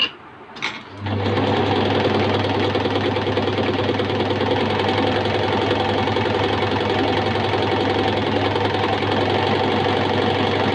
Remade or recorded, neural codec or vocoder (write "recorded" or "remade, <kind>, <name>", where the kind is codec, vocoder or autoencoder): recorded